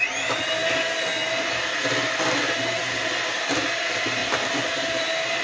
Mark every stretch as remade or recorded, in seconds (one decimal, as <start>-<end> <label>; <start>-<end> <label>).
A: 0.0-4.2 recorded; 4.2-5.4 remade